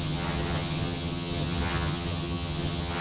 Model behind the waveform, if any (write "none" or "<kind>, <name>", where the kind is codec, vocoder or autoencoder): vocoder, HiFi-GAN